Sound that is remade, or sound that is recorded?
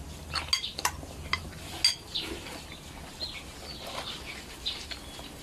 recorded